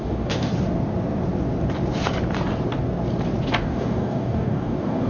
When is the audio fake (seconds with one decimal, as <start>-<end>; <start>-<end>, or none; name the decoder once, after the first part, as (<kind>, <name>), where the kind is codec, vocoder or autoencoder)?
0.0-0.5 (codec, DAC); 3.6-5.1